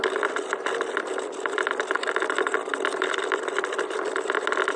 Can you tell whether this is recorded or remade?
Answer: recorded